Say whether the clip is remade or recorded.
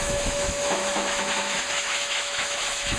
remade